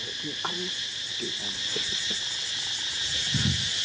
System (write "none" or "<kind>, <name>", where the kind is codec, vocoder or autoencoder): none